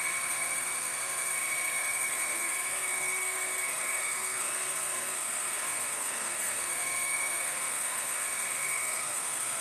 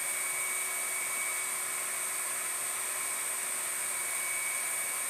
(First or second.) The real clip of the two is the second